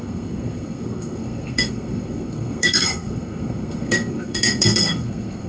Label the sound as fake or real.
fake